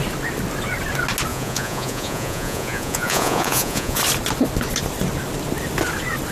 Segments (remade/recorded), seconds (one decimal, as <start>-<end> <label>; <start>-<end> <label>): 0.0-1.3 recorded; 1.3-4.0 remade; 4.0-6.3 recorded